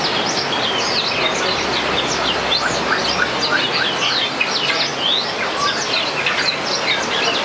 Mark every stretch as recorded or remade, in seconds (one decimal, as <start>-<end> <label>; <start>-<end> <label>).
0.0-7.4 recorded